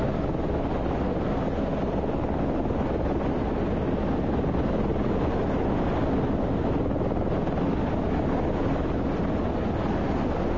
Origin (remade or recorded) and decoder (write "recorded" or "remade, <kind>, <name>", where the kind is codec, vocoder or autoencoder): recorded